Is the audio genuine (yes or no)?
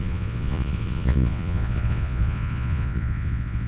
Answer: no